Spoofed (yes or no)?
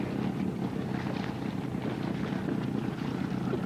no